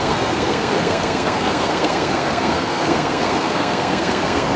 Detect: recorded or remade remade